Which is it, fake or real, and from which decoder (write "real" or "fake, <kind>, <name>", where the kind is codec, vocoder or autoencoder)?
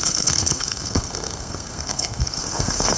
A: fake, codec, SNAC